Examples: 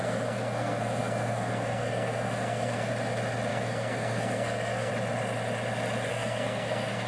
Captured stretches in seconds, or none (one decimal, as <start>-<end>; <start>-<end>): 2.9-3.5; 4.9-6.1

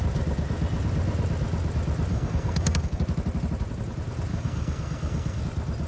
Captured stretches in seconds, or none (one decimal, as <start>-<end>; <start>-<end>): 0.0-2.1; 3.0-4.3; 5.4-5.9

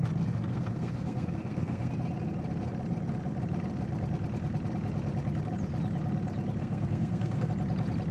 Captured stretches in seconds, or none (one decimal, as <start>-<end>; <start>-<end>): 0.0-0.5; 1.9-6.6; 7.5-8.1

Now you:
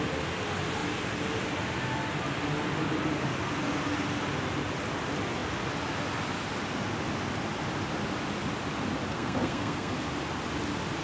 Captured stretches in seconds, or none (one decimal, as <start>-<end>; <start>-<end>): 0.0-9.1; 9.9-11.0